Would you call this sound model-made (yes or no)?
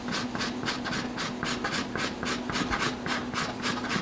no